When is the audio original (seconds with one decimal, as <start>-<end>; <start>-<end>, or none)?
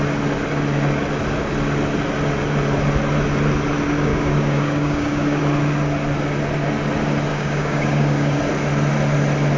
0.0-4.1; 5.4-7.3; 8.4-9.6